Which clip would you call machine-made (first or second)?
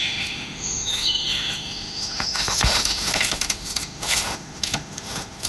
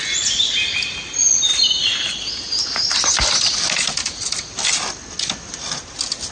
first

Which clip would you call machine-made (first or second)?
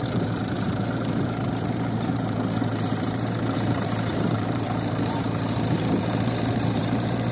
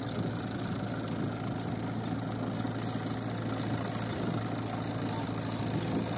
first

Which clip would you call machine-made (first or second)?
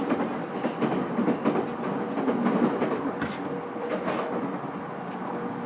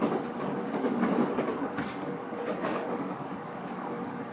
second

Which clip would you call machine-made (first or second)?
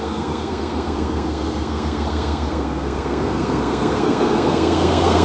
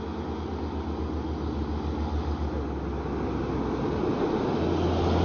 first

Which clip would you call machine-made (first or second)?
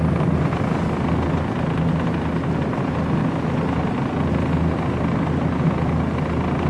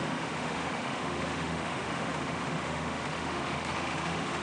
second